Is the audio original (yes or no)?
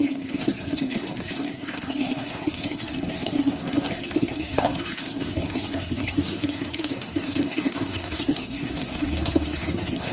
no